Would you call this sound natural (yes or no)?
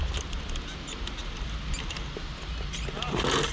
yes